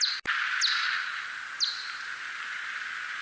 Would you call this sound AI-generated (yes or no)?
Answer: no